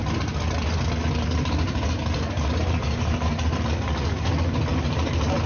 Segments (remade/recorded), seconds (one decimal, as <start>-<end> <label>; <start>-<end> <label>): 0.0-1.0 recorded; 1.0-4.3 remade; 4.3-5.5 recorded